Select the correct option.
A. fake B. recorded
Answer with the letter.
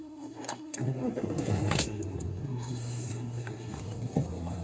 A